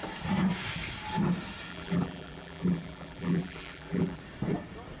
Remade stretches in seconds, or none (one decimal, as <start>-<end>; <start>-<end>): 1.7-4.2